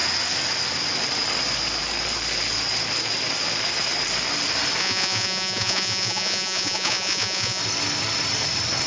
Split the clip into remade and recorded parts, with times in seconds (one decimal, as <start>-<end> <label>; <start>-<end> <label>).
0.0-4.8 recorded; 4.8-7.6 remade; 7.6-8.9 recorded